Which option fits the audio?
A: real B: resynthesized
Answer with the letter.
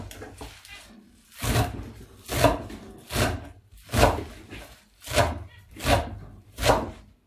A